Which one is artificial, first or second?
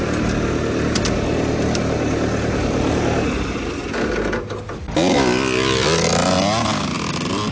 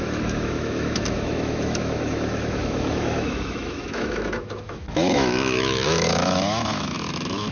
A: second